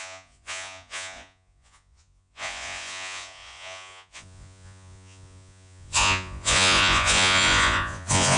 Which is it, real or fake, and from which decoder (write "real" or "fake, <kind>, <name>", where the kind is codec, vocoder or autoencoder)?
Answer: fake, vocoder, Vocos